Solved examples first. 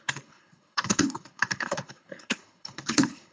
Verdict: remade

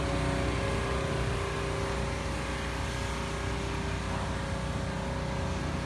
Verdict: recorded